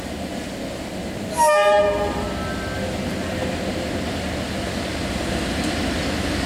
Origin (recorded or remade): recorded